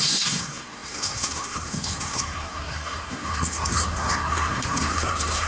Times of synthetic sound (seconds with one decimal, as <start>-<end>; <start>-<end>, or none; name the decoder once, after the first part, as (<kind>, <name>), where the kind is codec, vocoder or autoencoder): 0.0-5.5 (codec, SNAC)